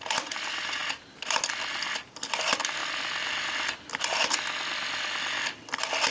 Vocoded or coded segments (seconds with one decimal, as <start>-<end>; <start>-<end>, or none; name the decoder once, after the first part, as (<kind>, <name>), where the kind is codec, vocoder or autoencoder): none